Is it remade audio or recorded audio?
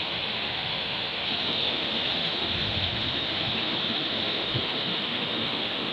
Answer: remade